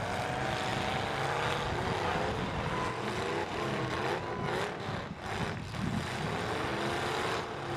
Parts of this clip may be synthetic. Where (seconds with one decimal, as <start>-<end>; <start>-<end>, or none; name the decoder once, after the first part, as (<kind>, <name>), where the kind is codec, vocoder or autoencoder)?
none